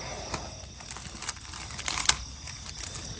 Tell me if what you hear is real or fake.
real